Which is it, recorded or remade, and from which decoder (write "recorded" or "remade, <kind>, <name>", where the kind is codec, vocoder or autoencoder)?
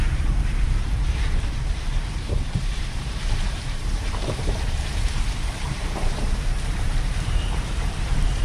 remade, vocoder, BigVGAN v2